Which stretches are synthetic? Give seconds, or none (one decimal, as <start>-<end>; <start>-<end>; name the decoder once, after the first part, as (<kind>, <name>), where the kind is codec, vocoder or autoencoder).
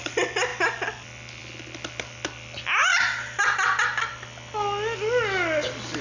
none